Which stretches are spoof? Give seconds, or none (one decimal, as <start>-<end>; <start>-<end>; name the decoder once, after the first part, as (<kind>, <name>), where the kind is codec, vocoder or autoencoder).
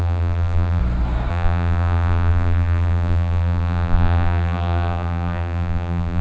0.0-0.8 (vocoder, BigVGAN v2); 1.3-6.2